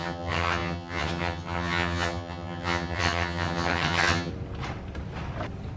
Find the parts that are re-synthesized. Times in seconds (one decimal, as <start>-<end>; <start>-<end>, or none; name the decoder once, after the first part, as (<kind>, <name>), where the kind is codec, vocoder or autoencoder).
0.0-4.3 (vocoder, HiFi-GAN)